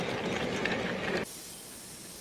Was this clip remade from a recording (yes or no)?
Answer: no